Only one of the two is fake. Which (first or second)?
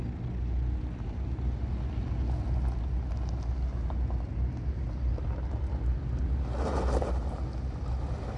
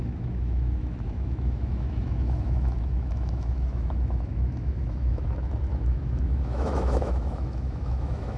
second